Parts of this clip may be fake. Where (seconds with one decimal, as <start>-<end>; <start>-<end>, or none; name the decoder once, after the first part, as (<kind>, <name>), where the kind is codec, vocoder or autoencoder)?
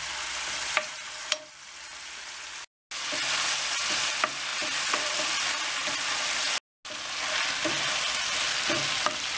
none